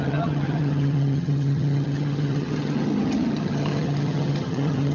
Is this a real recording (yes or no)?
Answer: no